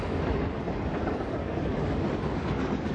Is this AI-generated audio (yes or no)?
yes